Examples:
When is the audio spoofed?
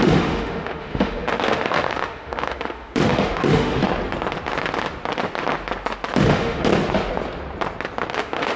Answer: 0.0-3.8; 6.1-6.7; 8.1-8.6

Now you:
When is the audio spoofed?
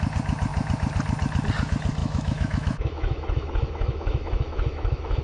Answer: 2.0-5.2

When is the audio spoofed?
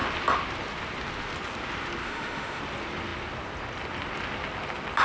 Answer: 2.0-2.6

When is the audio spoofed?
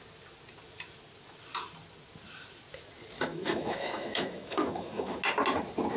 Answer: 3.3-5.2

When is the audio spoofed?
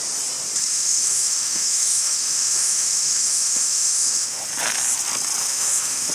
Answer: 0.7-4.4; 5.4-6.1